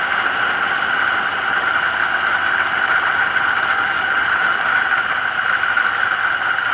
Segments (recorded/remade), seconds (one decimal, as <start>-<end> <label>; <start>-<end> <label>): 0.0-3.7 recorded; 3.7-4.7 remade; 4.7-6.7 recorded